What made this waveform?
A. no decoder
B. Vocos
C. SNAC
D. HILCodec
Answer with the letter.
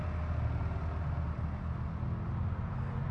A